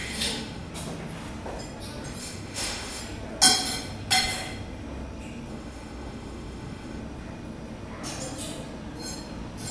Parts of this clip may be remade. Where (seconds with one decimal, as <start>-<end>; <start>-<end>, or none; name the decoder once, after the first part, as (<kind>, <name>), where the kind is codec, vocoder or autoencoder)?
0.0-0.7 (autoencoder, DAC-VAE); 2.2-3.0; 5.5-7.0